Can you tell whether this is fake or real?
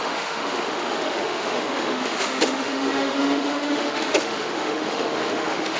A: fake